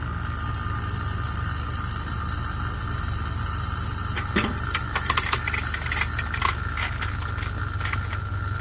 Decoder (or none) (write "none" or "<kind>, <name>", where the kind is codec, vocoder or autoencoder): none